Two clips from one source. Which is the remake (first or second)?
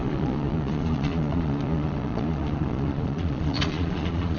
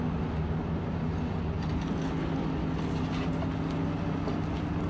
first